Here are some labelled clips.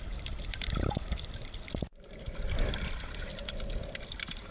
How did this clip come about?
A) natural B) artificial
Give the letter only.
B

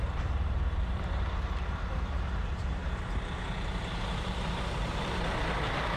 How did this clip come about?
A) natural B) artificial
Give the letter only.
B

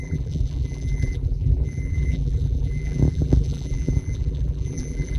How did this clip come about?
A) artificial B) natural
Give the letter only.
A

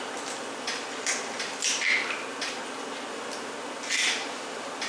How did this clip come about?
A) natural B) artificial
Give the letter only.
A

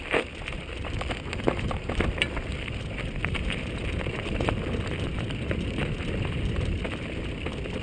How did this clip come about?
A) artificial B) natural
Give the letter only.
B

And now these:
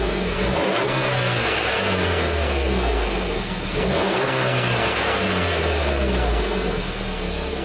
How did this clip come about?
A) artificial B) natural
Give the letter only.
A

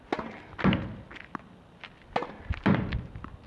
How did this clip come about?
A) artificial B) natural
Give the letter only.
B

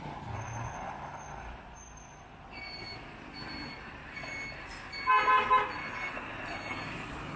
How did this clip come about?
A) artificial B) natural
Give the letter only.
B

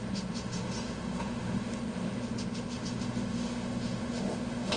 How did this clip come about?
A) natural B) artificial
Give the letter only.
B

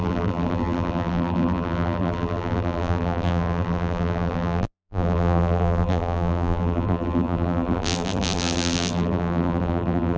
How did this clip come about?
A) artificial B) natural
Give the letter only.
A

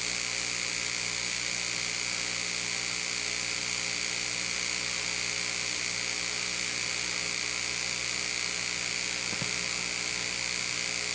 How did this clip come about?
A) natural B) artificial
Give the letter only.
A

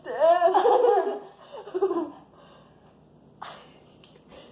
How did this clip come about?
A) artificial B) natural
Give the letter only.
B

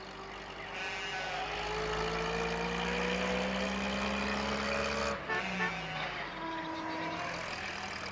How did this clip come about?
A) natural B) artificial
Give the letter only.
A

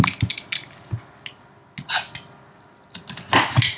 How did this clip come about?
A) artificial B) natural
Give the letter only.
B